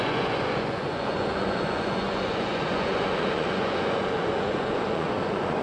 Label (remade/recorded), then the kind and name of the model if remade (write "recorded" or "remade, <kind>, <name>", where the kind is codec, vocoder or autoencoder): remade, vocoder, Vocos